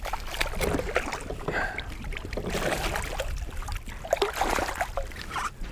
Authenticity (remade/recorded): recorded